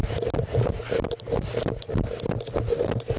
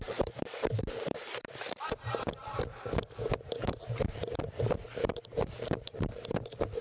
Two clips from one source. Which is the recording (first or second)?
first